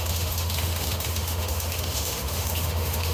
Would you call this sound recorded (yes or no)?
no